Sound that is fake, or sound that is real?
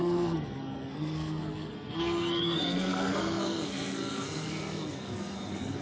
fake